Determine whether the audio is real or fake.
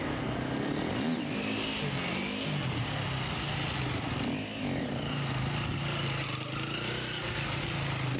real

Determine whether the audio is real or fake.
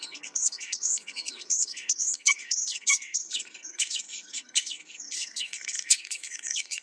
fake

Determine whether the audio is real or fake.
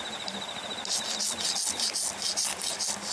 real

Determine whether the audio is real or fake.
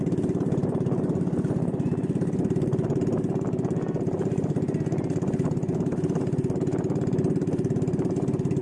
real